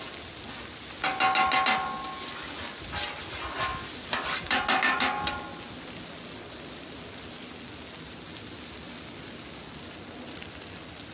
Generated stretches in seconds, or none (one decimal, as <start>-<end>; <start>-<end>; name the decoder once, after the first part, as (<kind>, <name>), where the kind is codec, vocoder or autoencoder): none